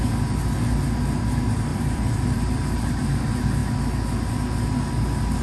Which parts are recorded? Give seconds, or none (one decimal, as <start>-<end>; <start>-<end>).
0.0-1.7; 2.9-5.4